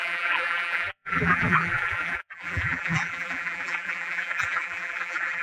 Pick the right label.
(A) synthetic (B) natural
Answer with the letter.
A